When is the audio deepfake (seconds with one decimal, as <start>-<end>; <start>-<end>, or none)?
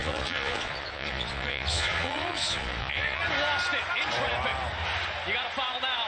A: 0.0-3.2